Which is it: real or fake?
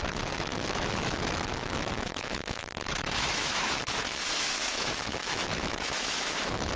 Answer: fake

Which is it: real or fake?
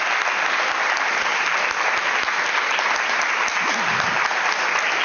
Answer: real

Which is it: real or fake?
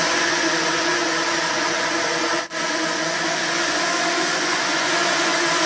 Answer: fake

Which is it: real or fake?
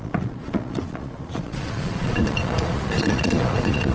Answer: fake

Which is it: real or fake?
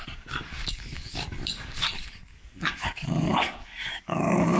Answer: fake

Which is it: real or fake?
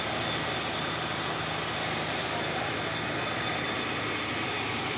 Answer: real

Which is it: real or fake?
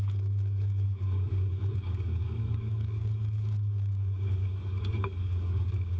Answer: fake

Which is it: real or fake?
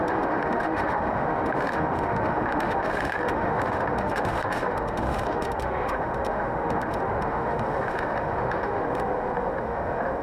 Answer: fake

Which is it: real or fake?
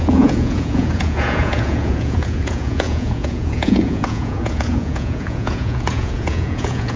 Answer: fake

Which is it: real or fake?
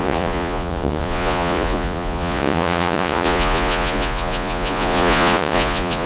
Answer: fake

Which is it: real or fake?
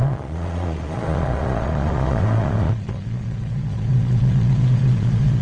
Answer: fake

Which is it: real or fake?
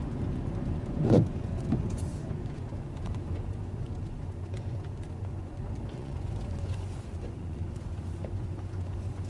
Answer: fake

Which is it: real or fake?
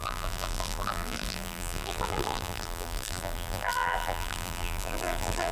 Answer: fake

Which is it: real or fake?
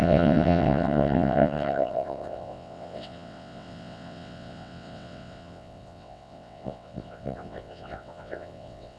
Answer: fake